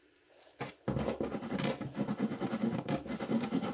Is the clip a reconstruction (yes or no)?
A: no